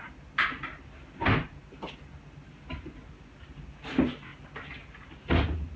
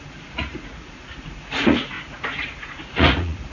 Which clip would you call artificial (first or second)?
second